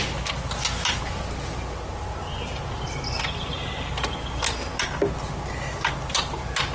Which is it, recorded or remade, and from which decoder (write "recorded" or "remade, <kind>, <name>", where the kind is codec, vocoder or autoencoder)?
recorded